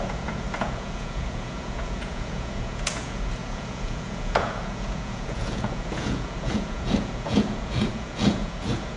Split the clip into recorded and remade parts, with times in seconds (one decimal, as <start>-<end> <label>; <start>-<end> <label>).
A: 0.0-9.0 remade